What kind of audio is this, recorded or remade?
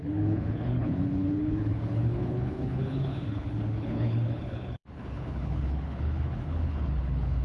remade